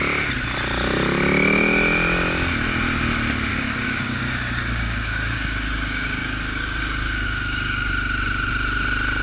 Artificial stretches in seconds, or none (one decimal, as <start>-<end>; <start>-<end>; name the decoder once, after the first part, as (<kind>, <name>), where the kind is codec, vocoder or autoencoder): 3.5-7.9 (codec, DAC)

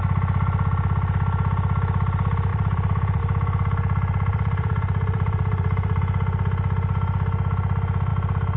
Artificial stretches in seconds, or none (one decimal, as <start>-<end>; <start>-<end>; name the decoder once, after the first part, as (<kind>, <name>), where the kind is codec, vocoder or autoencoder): 2.5-3.2 (vocoder, BigVGAN v2); 4.3-6.0

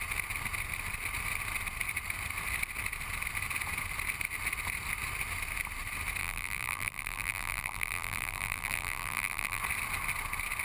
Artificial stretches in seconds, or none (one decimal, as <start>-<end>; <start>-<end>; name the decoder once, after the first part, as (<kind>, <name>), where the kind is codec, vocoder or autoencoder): 6.2-9.6 (vocoder, BigVGAN v2)

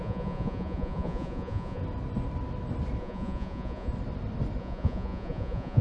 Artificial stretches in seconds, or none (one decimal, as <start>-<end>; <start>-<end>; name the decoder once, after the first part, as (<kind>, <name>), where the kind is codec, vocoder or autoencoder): 0.0-1.8 (vocoder, Vocos); 3.0-3.9; 4.6-5.8

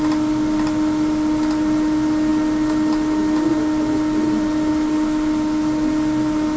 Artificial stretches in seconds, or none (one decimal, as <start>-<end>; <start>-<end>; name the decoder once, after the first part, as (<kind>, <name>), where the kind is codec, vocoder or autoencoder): none